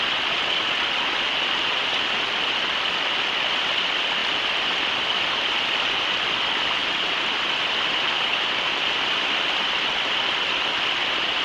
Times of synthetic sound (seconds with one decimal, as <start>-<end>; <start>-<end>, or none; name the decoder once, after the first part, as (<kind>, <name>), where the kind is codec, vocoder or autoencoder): 4.2-5.9 (vocoder, BigVGAN v2); 6.8-9.6